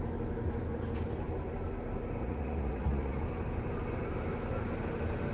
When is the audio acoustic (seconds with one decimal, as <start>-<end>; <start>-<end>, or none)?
0.0-2.2; 3.2-5.3